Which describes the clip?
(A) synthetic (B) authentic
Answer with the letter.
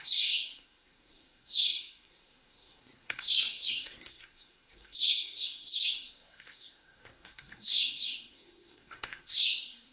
A